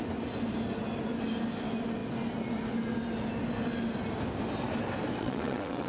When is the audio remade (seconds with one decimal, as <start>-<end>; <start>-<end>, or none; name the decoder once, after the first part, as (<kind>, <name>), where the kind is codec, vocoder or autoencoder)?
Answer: 5.2-5.9 (vocoder, WaveNeXt)